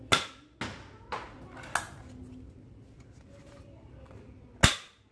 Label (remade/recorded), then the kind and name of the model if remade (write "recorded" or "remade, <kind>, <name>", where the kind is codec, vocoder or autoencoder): recorded